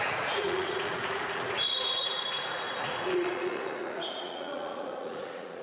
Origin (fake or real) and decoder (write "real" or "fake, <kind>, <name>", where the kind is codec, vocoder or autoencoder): fake, vocoder, Vocos